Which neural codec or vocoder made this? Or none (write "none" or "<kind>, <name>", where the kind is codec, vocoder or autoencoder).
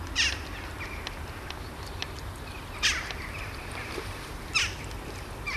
none